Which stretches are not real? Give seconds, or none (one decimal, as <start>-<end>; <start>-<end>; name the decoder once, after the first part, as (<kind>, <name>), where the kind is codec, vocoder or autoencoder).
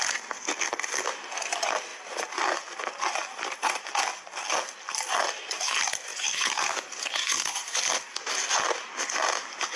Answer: 6.1-7.8 (codec, DAC)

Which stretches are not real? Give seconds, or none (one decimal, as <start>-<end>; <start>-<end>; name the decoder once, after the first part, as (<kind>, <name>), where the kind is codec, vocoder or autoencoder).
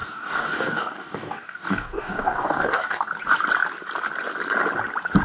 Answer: 0.0-3.1 (codec, DAC)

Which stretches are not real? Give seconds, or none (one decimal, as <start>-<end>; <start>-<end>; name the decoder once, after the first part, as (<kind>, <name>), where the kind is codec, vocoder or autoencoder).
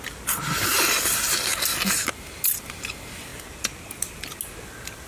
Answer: none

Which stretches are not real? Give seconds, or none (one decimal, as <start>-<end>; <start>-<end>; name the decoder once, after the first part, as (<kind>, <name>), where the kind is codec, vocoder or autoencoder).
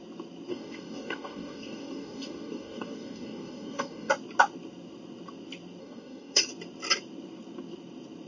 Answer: 0.5-4.1 (codec, DAC); 5.8-6.5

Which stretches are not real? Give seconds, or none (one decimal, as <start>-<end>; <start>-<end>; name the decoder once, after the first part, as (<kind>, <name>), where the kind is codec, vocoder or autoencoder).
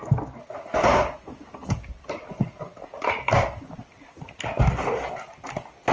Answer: none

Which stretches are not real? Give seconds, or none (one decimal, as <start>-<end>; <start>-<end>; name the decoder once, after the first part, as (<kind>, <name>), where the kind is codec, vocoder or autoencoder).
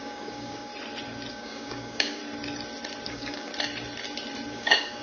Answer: 0.0-0.7 (codec, DAC); 1.3-2.2; 3.1-3.5; 4.5-5.0